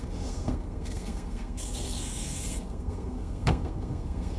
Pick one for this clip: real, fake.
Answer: fake